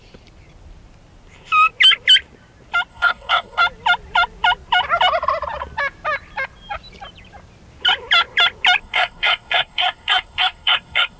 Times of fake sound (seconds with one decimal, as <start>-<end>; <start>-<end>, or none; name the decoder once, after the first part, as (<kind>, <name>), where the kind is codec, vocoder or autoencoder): 2.9-3.6 (codec, SNAC); 8.8-11.2